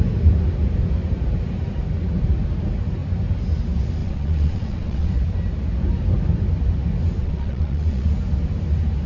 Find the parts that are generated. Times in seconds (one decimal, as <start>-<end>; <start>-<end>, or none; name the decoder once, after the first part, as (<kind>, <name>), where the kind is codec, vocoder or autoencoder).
4.0-5.1 (vocoder, WaveNeXt); 7.2-8.1